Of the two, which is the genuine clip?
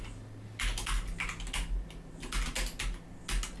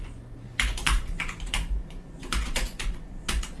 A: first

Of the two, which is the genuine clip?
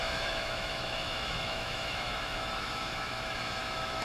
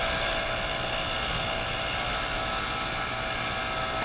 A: second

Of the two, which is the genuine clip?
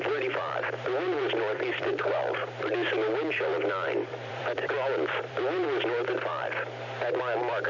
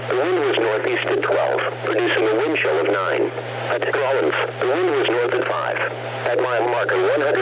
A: second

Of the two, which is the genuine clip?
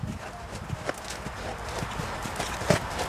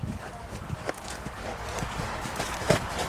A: first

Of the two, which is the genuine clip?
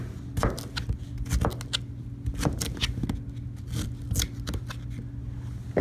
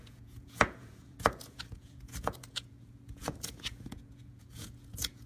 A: first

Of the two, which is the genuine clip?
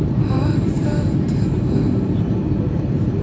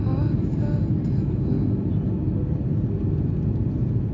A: second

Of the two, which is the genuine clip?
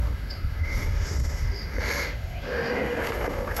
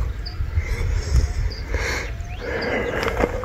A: second